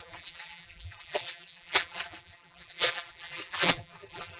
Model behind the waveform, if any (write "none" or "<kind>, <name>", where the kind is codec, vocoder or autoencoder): vocoder, BigVGAN v2